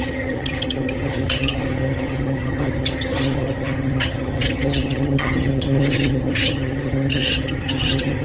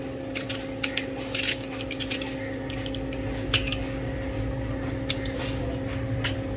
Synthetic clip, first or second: first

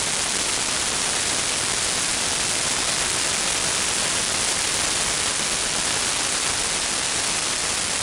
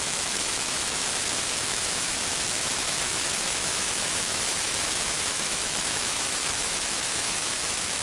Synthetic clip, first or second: second